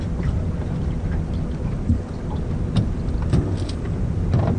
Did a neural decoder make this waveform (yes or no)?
no